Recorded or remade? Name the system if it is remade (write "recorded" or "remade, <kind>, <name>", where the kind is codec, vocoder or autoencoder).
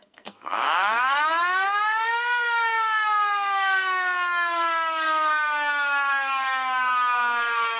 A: remade, codec, SNAC